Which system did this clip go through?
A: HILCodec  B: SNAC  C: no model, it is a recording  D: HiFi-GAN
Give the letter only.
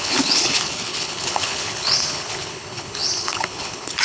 A